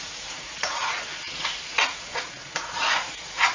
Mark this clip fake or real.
fake